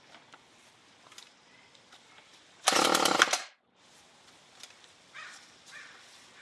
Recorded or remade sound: recorded